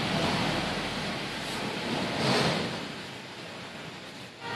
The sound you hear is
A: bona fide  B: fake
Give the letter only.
A